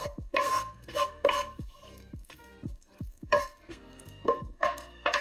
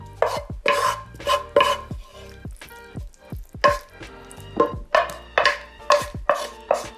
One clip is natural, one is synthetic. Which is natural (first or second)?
second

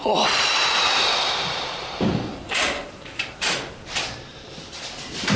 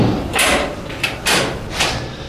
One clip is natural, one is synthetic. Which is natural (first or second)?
second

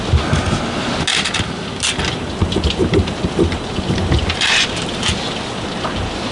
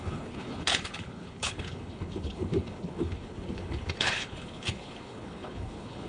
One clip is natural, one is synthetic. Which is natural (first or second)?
first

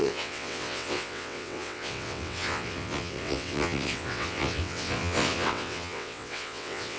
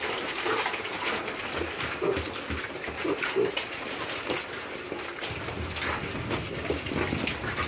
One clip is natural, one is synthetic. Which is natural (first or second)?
second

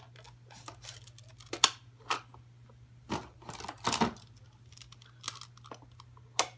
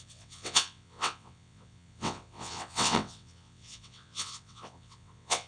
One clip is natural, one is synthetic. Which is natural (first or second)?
first